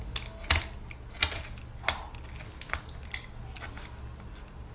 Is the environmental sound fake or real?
real